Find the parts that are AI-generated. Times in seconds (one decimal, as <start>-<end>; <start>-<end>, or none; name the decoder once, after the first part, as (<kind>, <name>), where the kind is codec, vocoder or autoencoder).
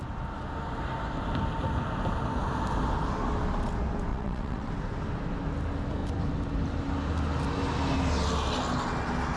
4.1-4.7 (vocoder, WaveNeXt)